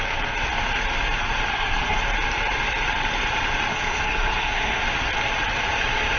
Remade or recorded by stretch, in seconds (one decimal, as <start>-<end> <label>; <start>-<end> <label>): 0.0-1.5 recorded; 1.5-2.0 remade; 2.0-3.7 recorded; 3.7-4.8 remade; 4.8-6.2 recorded